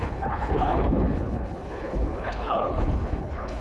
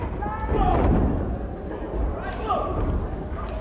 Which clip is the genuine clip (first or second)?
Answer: second